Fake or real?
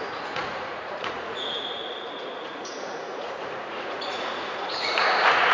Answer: fake